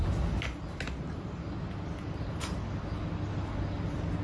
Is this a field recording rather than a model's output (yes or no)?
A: yes